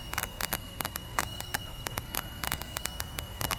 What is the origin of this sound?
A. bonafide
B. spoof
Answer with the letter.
B